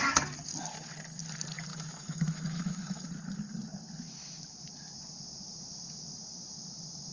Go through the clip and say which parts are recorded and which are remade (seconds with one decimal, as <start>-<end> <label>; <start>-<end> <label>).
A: 0.0-1.7 recorded; 1.7-3.1 remade; 3.1-7.1 recorded